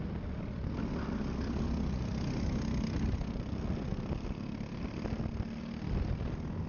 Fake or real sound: real